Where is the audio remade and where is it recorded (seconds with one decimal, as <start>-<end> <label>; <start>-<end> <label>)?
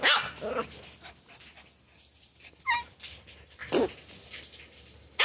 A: 0.0-5.2 recorded